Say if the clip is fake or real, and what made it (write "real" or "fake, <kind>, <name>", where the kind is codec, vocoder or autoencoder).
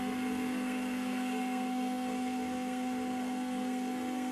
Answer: fake, codec, SNAC